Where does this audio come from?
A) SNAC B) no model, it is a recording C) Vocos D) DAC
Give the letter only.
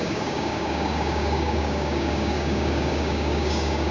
D